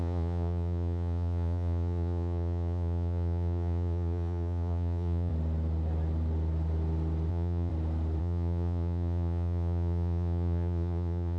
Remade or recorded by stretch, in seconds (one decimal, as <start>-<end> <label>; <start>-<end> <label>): 0.0-5.3 remade; 5.3-7.3 recorded; 7.3-7.7 remade; 7.7-8.2 recorded; 8.2-11.4 remade